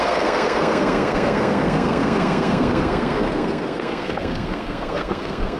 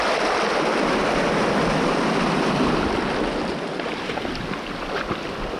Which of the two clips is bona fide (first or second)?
second